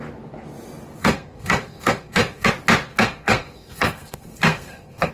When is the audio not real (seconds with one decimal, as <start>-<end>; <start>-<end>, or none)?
1.0-2.5; 2.9-5.1